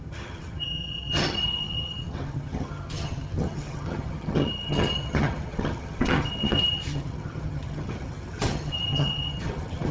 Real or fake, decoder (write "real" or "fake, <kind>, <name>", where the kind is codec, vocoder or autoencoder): fake, vocoder, HiFi-GAN